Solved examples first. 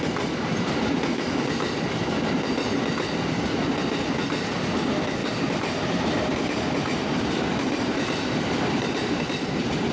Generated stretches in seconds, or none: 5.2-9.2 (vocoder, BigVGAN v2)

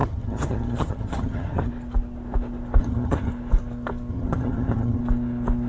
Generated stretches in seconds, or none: 0.0-1.7 (vocoder, HiFi-GAN); 2.8-3.3; 4.1-5.0

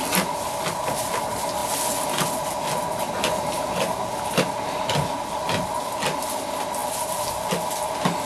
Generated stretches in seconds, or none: none